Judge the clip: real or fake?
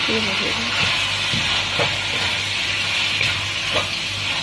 real